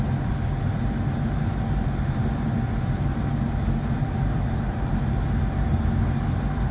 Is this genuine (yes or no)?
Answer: no